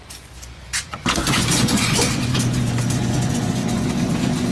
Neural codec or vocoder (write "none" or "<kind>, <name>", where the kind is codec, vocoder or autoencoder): vocoder, Vocos